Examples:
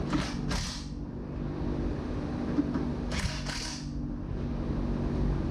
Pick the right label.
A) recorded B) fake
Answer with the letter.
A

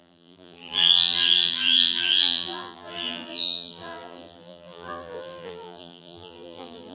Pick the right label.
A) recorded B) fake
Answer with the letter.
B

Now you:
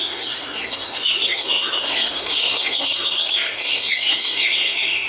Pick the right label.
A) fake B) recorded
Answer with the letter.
A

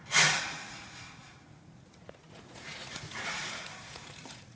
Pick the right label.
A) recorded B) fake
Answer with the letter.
B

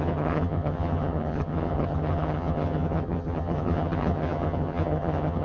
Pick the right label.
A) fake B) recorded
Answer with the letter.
A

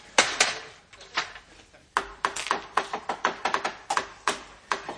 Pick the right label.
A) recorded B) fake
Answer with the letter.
A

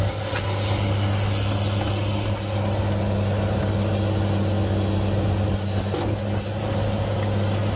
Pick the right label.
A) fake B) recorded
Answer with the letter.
B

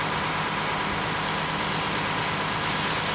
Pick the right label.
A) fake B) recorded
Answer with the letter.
B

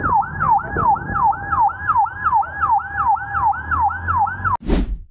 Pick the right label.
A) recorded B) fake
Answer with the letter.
A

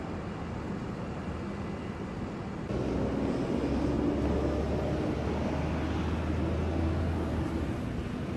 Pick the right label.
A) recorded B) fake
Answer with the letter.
A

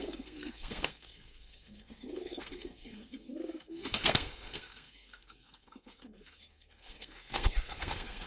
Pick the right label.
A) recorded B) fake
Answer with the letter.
B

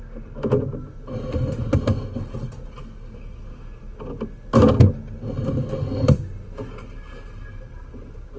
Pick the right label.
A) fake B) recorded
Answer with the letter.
B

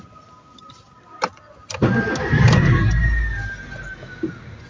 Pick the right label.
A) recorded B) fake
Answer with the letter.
A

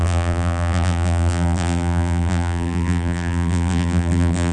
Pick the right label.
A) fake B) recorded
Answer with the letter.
A